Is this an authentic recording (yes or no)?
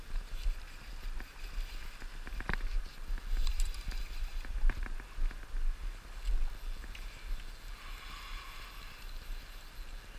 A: yes